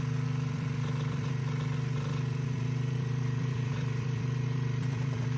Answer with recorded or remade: remade